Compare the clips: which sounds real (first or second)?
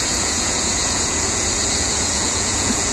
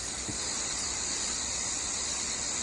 second